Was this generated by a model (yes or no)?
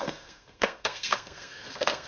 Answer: yes